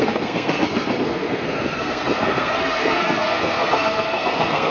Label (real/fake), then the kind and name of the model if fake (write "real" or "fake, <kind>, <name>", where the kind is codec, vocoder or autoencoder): fake, codec, SNAC